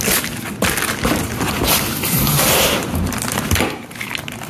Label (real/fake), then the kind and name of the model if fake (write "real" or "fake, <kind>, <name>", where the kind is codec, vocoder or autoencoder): real